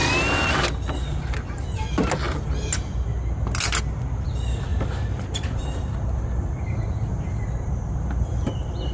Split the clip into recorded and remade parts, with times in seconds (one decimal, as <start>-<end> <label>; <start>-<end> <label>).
0.0-4.7 recorded; 4.7-5.6 remade; 5.6-8.9 recorded